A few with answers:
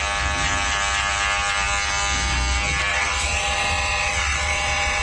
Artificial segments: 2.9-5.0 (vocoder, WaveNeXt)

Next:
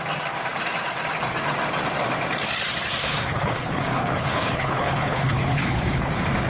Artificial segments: 3.0-6.1 (codec, HILCodec)

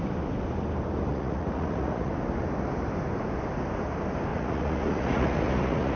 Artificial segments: 1.1-2.1 (vocoder, Vocos); 4.3-6.0

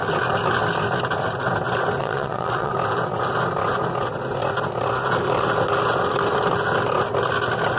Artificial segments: 2.0-2.7 (vocoder, WaveNeXt)

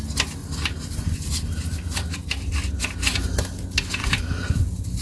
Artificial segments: 0.4-3.1 (vocoder, BigVGAN v2); 4.0-5.0

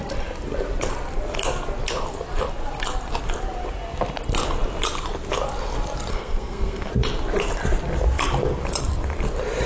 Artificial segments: 6.1-6.9 (codec, SNAC)